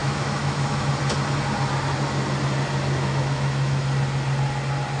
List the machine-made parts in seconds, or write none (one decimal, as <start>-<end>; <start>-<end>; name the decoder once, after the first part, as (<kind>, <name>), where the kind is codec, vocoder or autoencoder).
0.0-0.9 (autoencoder, DAC-VAE); 3.0-3.8